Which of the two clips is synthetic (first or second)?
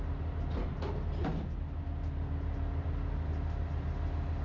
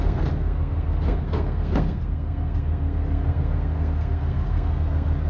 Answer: second